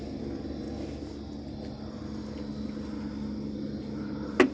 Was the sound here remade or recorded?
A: recorded